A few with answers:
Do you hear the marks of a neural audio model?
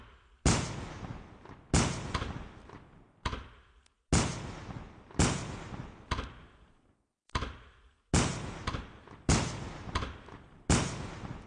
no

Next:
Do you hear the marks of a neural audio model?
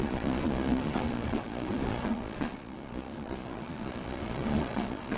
yes